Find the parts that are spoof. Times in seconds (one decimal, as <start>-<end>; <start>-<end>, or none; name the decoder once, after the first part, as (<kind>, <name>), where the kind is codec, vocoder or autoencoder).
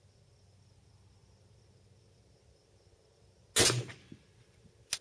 none